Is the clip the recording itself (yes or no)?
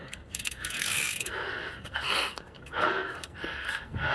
no